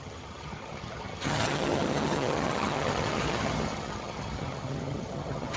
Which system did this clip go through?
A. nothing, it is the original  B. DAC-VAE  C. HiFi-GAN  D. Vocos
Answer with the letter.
C